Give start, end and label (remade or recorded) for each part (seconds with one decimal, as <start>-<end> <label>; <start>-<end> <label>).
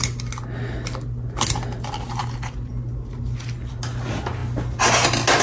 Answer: 0.0-5.4 recorded